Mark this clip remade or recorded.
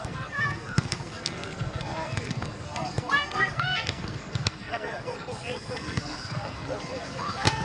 remade